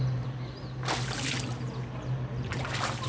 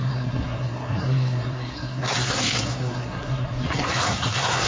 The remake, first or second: second